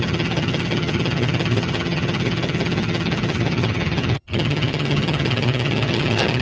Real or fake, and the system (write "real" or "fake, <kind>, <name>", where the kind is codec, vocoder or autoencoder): fake, vocoder, HiFi-GAN